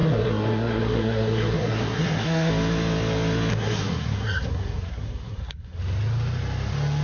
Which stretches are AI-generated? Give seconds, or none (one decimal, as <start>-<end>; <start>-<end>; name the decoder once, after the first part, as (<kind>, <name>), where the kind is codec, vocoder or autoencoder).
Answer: 0.0-2.5 (codec, SNAC); 3.5-5.8